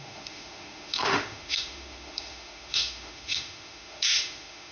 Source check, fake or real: fake